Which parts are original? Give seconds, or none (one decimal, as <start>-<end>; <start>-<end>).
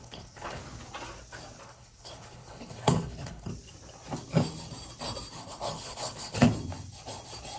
0.6-1.6; 3.5-5.3; 6.5-7.6